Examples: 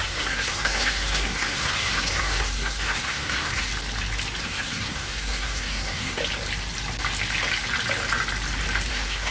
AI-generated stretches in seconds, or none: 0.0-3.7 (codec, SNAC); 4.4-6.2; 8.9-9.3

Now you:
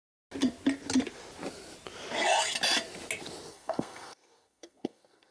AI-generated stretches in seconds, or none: 3.5-5.3 (codec, SNAC)

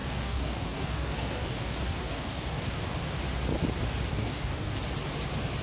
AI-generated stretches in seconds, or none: 0.0-3.1 (codec, DAC); 4.1-4.8